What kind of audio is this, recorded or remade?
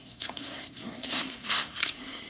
remade